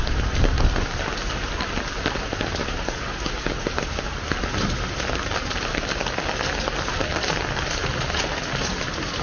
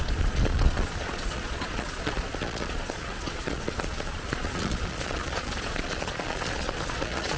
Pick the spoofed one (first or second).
second